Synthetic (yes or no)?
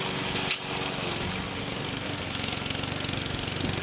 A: no